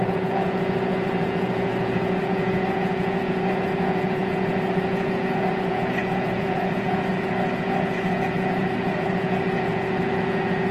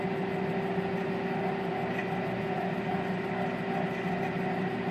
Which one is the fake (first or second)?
first